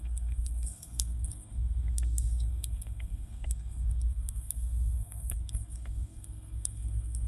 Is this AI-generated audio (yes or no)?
yes